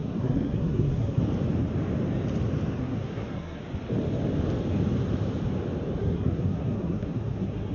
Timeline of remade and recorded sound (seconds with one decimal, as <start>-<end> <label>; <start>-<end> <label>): 0.0-1.2 remade; 1.2-2.8 recorded; 2.8-3.6 remade; 3.6-6.0 recorded; 6.0-7.7 remade